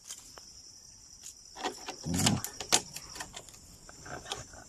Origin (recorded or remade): recorded